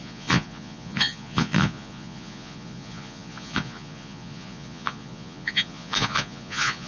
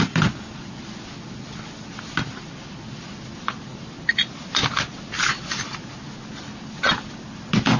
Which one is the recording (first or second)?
second